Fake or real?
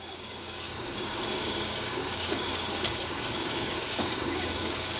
fake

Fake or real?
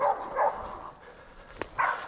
real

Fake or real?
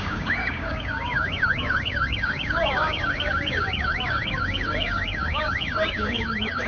fake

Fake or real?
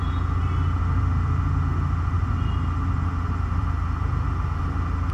real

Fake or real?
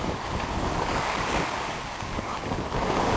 fake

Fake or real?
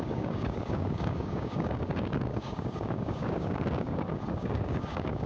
fake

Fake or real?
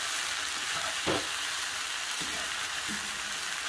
real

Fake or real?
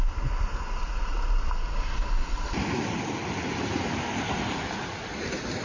real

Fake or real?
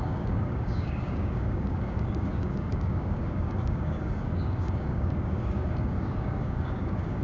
fake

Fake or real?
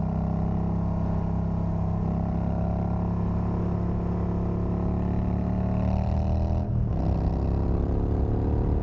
real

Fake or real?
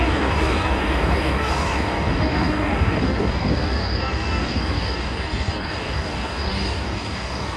fake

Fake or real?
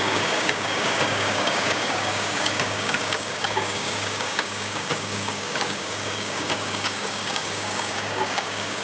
fake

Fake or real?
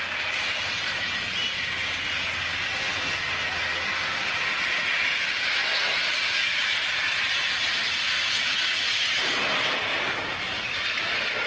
real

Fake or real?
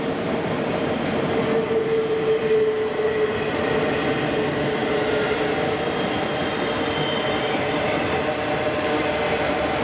real